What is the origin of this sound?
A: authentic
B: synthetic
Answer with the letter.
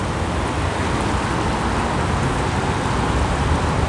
A